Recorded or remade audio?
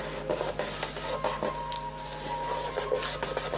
recorded